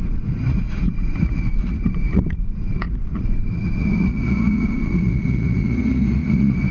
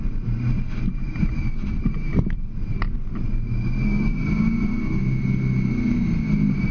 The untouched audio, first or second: second